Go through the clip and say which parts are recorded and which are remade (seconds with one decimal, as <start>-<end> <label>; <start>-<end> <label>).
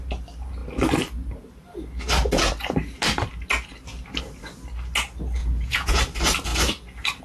0.0-5.4 recorded; 5.4-6.0 remade; 6.0-7.2 recorded